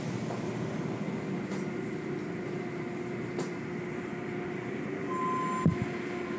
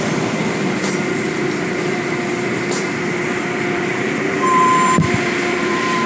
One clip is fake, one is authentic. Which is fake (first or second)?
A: second